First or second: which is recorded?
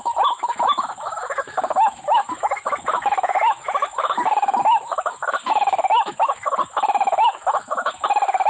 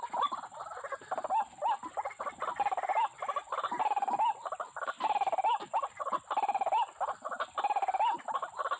second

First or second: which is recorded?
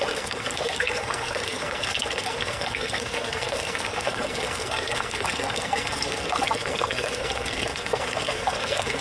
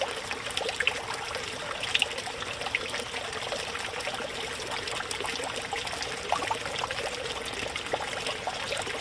second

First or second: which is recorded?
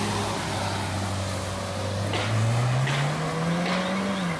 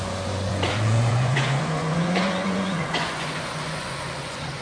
first